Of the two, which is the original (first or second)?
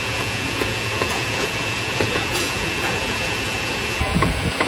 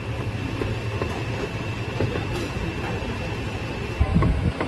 second